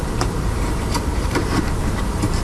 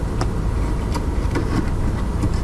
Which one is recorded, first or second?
second